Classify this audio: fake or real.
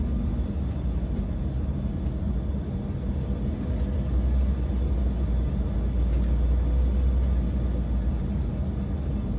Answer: real